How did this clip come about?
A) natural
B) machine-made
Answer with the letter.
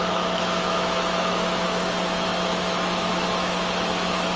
B